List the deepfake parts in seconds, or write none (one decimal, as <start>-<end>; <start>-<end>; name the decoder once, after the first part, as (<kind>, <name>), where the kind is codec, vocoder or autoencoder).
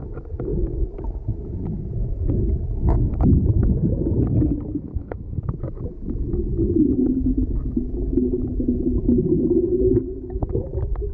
4.9-5.6 (codec, SNAC)